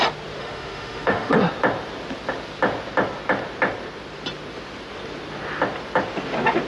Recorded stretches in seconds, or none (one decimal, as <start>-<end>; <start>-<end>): 0.0-0.4; 1.3-6.7